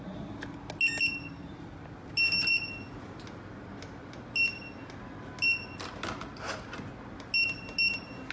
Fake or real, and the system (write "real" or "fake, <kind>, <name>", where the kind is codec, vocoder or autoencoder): real